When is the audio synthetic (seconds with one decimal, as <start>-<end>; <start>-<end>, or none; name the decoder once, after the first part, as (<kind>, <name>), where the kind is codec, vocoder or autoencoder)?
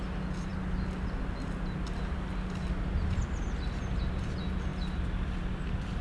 none